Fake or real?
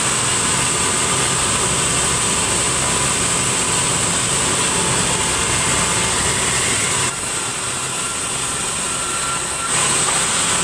real